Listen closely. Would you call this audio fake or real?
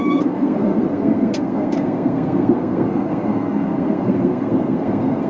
fake